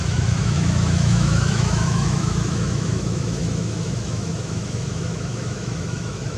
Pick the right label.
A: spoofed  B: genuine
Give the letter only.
A